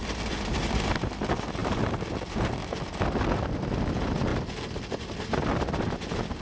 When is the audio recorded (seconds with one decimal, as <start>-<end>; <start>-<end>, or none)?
0.7-1.6; 2.4-4.3; 5.2-6.4